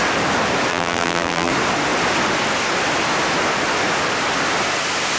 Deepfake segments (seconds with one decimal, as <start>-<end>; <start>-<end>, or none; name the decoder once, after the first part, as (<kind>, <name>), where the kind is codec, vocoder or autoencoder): 0.7-1.5 (vocoder, BigVGAN v2)